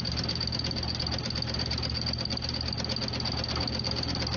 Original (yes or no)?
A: yes